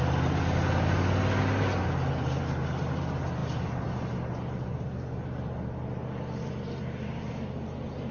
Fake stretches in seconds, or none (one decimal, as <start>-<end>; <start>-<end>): none